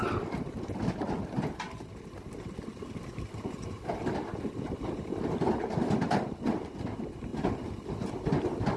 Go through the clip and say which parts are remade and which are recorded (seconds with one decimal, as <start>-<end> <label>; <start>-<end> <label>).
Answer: 0.0-8.8 recorded